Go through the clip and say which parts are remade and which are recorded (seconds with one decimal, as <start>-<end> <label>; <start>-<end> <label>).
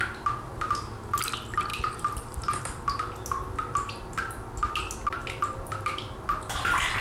0.0-1.7 recorded; 1.7-2.6 remade; 2.6-5.2 recorded; 5.2-6.1 remade; 6.1-7.0 recorded